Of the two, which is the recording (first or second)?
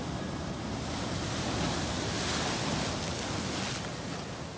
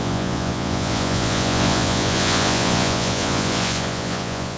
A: first